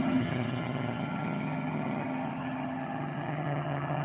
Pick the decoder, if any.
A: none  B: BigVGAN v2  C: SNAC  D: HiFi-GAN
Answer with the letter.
D